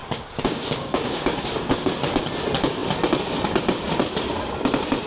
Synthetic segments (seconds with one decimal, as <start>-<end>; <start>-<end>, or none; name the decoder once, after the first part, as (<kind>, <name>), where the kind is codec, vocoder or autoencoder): 0.0-1.9 (codec, DAC)

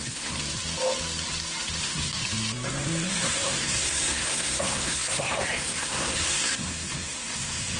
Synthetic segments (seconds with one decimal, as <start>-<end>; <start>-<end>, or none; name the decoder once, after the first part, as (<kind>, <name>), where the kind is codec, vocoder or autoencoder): 0.0-0.4 (codec, SNAC); 1.8-2.2; 3.1-7.8

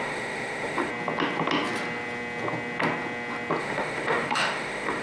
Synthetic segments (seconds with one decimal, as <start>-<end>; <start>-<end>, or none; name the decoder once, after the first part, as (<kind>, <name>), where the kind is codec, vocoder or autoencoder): 0.0-0.9 (autoencoder, DAC-VAE); 3.6-5.0

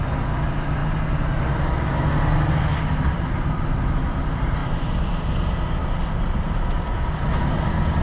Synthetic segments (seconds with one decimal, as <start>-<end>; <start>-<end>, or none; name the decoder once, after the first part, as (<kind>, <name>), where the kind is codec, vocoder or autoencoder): none

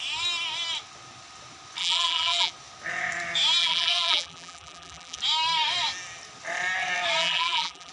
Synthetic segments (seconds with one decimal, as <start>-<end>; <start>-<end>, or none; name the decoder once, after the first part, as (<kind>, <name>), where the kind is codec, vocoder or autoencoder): 1.8-2.5 (vocoder, BigVGAN v2); 3.6-5.2; 7.2-7.9

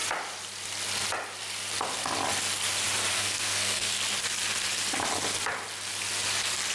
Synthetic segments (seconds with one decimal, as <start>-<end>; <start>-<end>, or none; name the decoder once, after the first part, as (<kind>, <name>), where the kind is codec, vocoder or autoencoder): 3.1-4.0 (codec, SNAC)

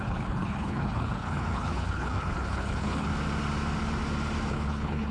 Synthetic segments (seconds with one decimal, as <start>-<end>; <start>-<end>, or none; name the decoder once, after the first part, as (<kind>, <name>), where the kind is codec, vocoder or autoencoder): 0.0-3.1 (codec, HILCodec); 4.5-5.1